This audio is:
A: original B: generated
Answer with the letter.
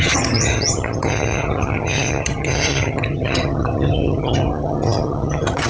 B